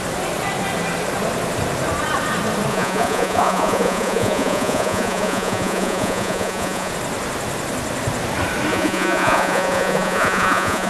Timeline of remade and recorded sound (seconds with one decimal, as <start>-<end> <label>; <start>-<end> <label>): 0.0-2.7 recorded; 2.7-6.9 remade; 6.9-8.7 recorded; 8.7-10.9 remade